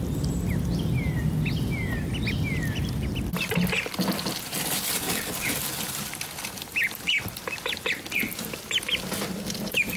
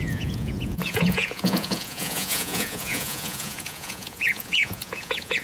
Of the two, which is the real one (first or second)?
first